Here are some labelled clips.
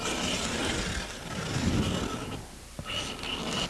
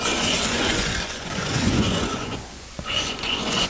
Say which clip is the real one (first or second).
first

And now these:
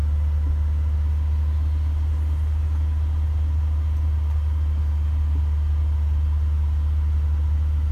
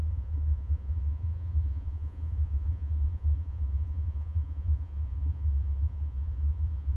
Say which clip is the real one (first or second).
first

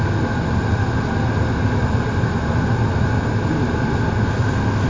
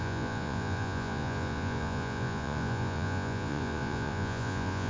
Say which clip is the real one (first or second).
first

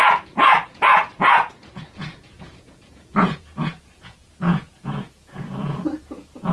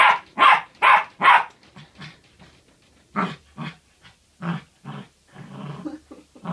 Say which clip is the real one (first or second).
second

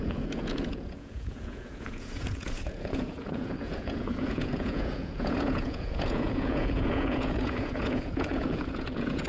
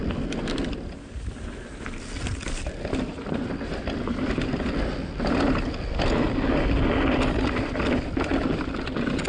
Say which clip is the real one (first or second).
second